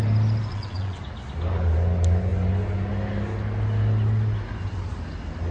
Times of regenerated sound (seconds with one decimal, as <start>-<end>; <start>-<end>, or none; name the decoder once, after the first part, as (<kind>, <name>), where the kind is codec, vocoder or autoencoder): 0.5-1.0 (vocoder, WaveNeXt)